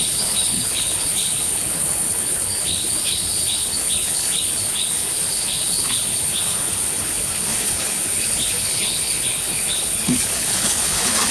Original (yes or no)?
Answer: no